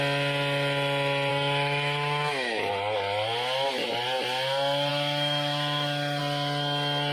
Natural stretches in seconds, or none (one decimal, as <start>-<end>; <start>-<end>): 0.0-1.3; 2.7-4.9; 6.2-7.1